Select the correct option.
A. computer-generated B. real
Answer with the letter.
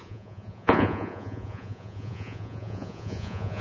A